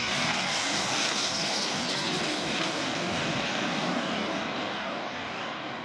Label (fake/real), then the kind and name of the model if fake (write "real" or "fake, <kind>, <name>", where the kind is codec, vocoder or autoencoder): fake, codec, DAC